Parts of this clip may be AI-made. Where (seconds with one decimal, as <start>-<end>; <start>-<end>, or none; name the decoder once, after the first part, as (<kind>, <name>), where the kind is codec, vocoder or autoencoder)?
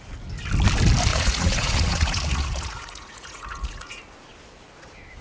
1.1-4.0 (vocoder, Vocos)